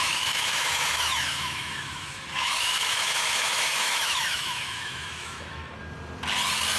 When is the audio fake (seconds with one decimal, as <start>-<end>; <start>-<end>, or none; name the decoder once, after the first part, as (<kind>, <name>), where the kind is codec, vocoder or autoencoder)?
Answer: 0.0-5.6 (autoencoder, DAC-VAE)